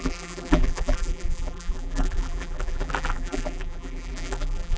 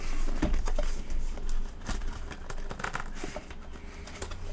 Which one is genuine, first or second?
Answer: second